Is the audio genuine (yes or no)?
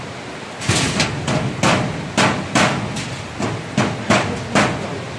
yes